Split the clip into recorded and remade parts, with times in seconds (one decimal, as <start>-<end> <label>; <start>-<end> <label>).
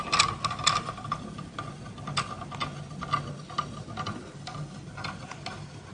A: 0.0-5.9 recorded